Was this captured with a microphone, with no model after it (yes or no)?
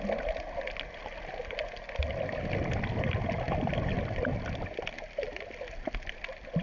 yes